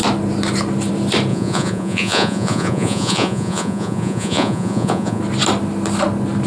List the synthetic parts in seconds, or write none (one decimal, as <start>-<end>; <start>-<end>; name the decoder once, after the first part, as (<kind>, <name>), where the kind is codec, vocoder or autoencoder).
1.3-5.2 (vocoder, Vocos)